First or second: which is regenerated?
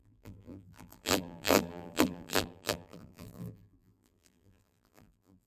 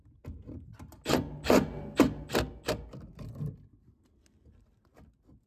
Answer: first